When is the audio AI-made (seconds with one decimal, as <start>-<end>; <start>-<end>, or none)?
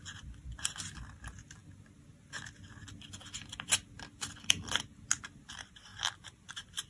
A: none